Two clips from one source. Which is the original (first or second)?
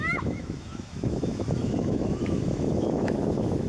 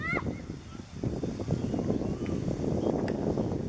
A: second